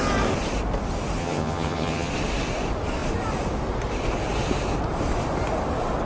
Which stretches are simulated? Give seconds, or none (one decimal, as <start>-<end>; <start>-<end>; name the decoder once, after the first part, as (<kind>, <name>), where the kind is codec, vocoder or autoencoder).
1.2-2.1 (vocoder, HiFi-GAN)